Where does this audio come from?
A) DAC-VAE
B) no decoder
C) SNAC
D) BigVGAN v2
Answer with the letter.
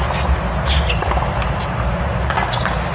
B